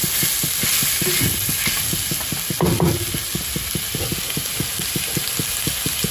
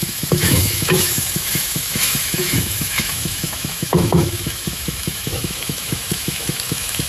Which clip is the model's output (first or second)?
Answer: second